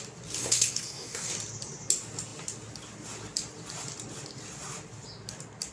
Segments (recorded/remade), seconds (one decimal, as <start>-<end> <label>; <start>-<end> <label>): 0.0-0.4 recorded; 0.4-1.3 remade; 1.3-5.7 recorded